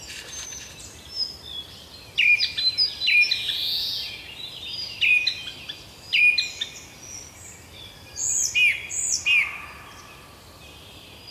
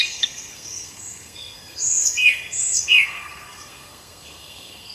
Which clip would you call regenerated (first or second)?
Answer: second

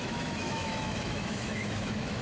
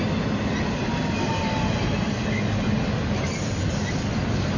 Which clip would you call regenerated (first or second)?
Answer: first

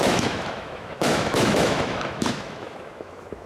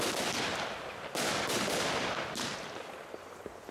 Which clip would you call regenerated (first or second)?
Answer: first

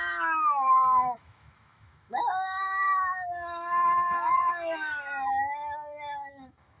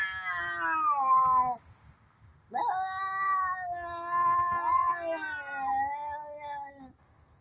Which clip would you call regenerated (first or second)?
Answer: first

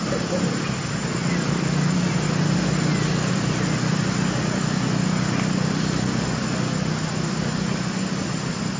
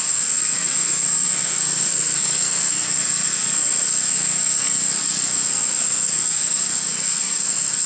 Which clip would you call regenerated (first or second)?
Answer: second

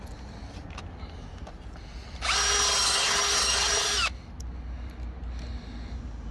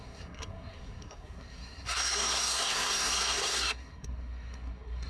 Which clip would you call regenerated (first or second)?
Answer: second